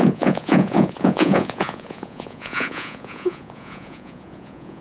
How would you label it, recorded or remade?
remade